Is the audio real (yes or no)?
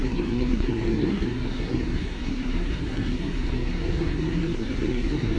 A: no